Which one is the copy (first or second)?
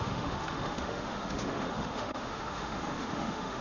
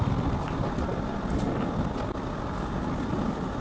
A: first